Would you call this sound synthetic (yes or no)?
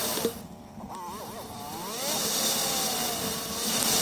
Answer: no